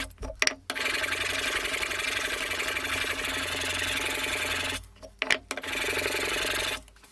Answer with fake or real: real